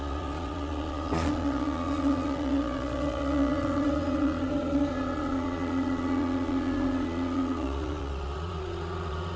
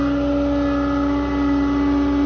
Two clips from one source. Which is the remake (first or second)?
first